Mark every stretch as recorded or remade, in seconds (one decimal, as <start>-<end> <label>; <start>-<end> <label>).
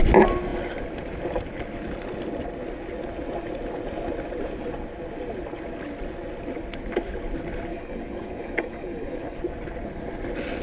0.0-7.7 recorded; 7.7-9.4 remade; 9.4-10.6 recorded